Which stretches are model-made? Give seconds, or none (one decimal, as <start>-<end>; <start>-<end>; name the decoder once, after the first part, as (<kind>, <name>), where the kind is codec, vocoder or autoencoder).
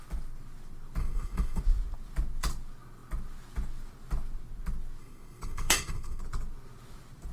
1.0-1.6 (codec, SNAC); 5.0-6.2